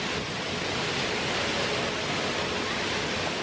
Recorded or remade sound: recorded